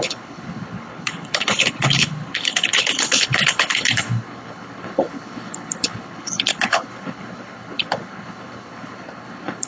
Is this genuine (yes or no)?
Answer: no